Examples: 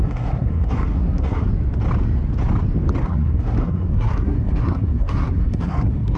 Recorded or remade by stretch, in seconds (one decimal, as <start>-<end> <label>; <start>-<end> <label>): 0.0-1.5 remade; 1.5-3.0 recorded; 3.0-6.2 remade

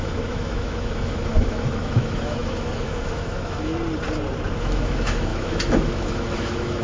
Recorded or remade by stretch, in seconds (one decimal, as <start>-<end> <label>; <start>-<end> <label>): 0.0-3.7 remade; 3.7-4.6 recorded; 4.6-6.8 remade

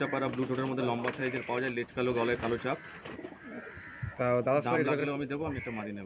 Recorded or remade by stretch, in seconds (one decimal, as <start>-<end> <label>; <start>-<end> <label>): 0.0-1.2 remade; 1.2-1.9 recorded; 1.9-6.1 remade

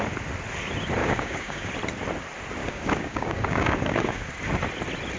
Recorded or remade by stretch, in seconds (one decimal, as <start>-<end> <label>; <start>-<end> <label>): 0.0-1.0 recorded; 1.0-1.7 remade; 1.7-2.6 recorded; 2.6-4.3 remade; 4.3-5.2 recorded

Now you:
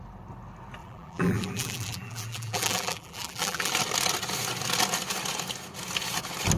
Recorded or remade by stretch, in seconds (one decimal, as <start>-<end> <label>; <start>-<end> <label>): 0.0-0.8 recorded; 0.8-3.7 remade; 3.7-6.6 recorded

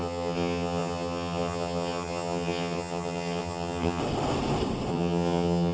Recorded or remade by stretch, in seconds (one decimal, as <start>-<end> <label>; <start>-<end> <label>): 0.0-4.0 remade; 4.0-4.9 recorded; 4.9-5.7 remade

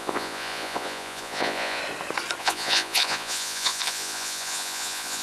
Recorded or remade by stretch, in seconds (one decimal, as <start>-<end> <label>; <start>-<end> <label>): 0.0-1.8 remade; 1.8-2.4 recorded; 2.4-5.2 remade